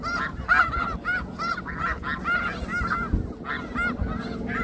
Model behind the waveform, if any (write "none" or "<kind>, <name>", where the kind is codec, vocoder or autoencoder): none